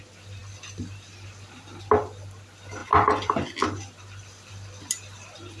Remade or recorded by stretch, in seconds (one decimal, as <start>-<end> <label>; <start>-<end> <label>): 0.0-5.6 recorded